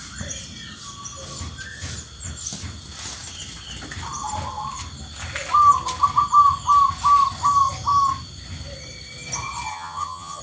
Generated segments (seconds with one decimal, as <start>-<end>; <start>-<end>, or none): 9.7-10.4